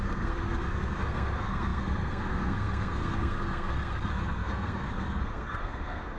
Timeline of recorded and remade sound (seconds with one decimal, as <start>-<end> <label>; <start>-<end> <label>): 0.0-6.2 remade